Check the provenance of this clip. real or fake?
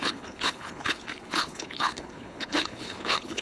fake